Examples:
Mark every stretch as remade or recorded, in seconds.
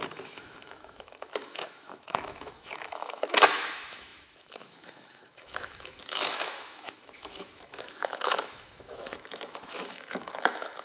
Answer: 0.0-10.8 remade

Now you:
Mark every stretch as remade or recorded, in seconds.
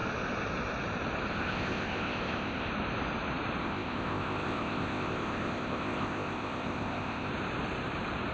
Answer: 0.0-1.3 recorded; 1.3-2.7 remade; 2.7-3.6 recorded; 3.6-7.3 remade; 7.3-8.3 recorded